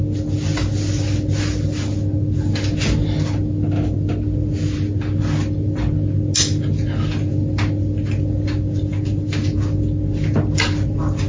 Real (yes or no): yes